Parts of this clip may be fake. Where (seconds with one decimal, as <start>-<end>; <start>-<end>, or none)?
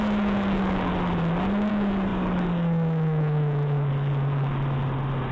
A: 0.0-0.9; 1.7-4.5